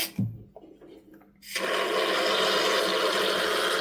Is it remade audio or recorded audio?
recorded